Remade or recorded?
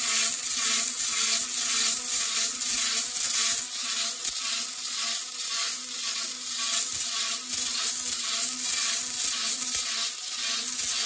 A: recorded